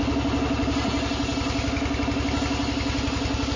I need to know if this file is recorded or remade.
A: recorded